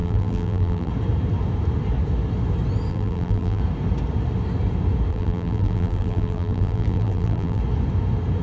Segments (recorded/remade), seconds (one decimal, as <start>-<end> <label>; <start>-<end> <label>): 0.0-0.9 remade; 0.9-2.9 recorded; 2.9-3.6 remade; 3.6-5.1 recorded; 5.1-7.6 remade; 7.6-8.4 recorded